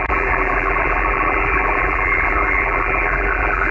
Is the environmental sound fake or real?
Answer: fake